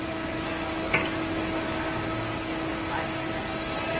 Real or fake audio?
real